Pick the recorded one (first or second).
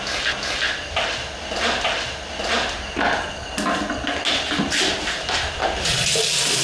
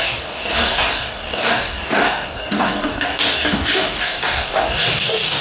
first